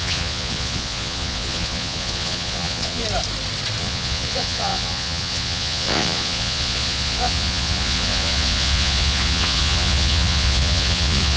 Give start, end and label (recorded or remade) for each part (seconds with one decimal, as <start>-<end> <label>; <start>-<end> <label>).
0.0-3.0 remade; 3.0-3.8 recorded; 3.8-11.4 remade